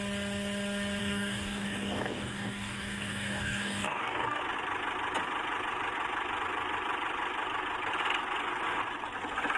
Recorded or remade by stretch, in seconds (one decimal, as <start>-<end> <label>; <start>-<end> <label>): 0.0-1.0 recorded; 1.0-4.4 remade; 4.4-9.6 recorded